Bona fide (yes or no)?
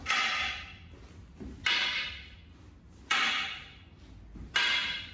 yes